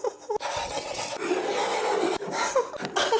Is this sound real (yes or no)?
yes